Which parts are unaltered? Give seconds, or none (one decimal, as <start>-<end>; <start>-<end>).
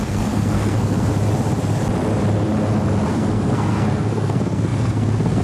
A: 1.1-3.1